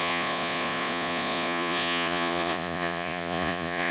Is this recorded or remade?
remade